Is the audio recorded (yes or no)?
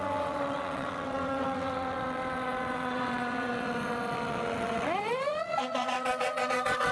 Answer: no